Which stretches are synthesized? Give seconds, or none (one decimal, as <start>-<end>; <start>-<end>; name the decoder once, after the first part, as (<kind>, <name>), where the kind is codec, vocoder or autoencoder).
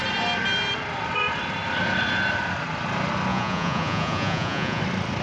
3.3-4.8 (vocoder, Vocos)